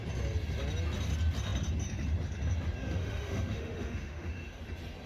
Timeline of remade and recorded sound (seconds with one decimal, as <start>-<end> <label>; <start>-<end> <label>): 0.0-2.8 recorded; 2.8-4.6 remade; 4.6-5.1 recorded